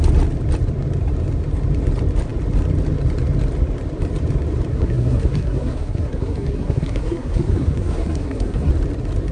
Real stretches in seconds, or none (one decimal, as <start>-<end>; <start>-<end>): 0.0-4.7; 8.7-9.3